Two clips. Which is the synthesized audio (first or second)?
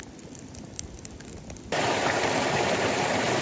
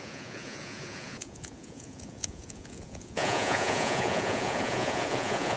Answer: second